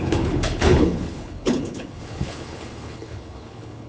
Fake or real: fake